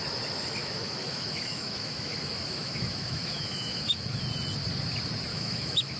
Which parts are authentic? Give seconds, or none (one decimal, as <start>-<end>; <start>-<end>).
0.0-0.6; 4.2-5.3